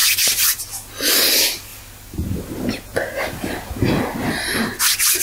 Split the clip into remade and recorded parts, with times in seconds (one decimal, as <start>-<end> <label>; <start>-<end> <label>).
0.0-5.2 recorded